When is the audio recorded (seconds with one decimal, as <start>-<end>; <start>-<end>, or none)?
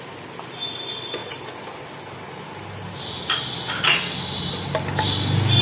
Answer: 0.0-5.6